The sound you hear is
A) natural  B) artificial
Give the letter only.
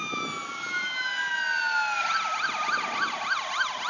A